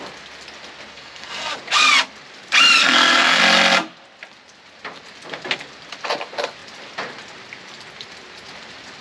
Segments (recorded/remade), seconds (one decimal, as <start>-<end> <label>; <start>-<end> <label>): 0.0-0.9 recorded; 0.9-1.5 remade; 1.5-2.8 recorded; 2.8-3.4 remade; 3.4-9.0 recorded